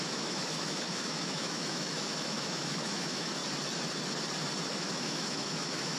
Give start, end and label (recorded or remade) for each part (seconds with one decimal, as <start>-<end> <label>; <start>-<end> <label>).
0.0-3.4 remade; 3.4-4.7 recorded; 4.7-6.0 remade